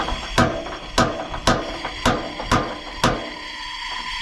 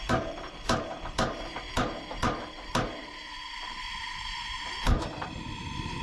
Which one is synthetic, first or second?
second